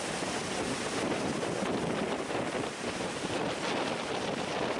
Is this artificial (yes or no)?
no